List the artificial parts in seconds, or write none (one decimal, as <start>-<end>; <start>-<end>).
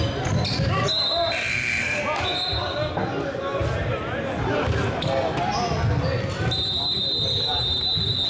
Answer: 1.5-2.0